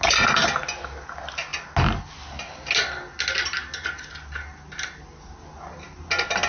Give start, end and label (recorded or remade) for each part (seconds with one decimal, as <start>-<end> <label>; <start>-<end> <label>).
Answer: 0.0-6.5 recorded